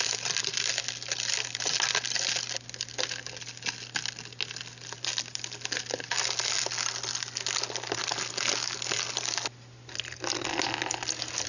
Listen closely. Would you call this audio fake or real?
real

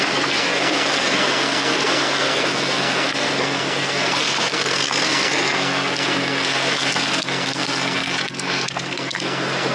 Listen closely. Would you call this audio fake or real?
fake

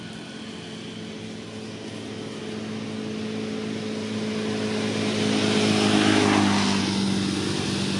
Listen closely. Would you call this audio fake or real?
real